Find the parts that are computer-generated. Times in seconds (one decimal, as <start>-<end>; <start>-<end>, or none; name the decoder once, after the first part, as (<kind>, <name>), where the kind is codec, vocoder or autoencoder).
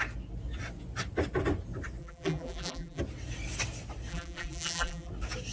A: 2.0-3.0 (vocoder, BigVGAN v2); 4.1-5.1